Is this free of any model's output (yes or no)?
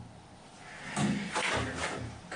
yes